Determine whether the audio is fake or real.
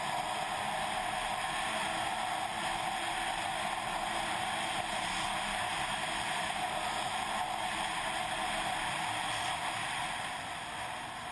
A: real